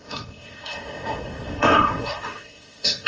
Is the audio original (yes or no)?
no